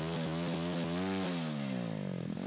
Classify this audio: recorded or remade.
recorded